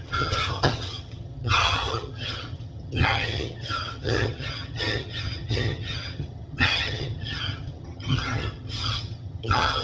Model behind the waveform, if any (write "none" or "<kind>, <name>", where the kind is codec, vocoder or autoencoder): vocoder, HiFi-GAN